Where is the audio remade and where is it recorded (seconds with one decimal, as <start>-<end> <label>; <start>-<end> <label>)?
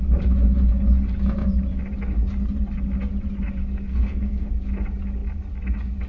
0.0-3.6 recorded; 3.6-4.5 remade; 4.5-6.1 recorded